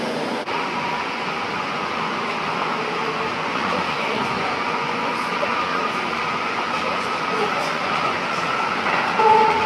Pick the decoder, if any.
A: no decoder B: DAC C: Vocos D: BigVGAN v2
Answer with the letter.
C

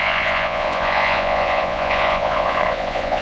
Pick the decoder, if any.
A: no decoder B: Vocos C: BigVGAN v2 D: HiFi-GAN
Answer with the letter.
B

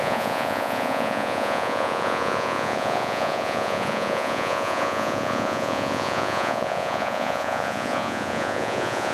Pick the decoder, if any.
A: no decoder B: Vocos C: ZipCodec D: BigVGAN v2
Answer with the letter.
B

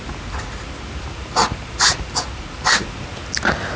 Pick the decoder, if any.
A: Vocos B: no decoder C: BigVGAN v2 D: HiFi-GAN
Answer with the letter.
B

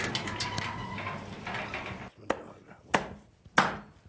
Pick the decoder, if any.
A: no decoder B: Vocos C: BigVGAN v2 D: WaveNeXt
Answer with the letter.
A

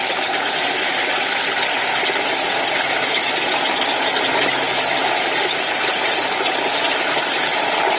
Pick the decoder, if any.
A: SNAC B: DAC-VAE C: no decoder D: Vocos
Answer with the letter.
C